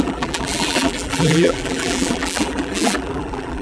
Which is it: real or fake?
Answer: fake